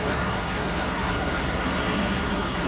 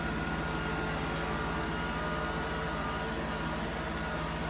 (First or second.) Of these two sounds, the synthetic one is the first